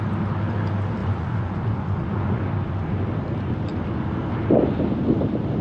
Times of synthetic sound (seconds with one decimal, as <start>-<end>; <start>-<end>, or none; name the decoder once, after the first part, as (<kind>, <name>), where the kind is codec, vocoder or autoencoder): 1.0-2.4 (vocoder, Vocos)